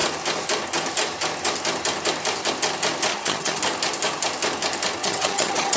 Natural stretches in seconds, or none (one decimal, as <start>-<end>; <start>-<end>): 0.0-3.1; 3.6-5.0